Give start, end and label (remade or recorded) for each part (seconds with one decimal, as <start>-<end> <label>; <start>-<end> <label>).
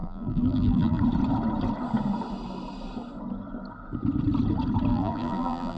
0.0-1.0 remade; 1.0-4.9 recorded; 4.9-5.8 remade